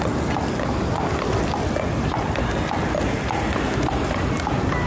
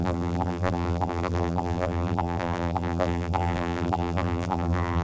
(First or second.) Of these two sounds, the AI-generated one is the second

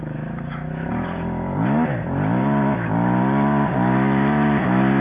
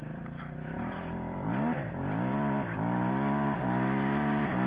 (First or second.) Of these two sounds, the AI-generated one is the second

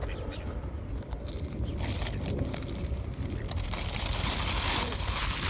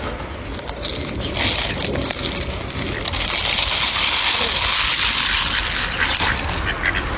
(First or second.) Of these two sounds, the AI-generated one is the first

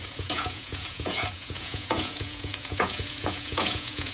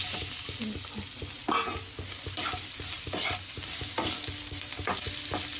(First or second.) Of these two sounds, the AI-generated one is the first